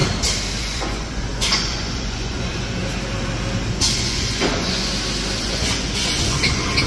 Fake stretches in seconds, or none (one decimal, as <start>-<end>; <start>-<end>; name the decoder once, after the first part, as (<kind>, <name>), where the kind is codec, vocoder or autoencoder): 0.6-2.8 (vocoder, Vocos); 3.7-4.9; 5.4-6.9